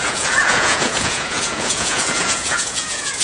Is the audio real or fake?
fake